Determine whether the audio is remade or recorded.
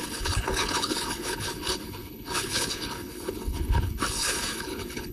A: remade